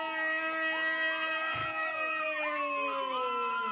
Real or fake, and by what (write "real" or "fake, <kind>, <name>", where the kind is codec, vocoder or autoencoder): real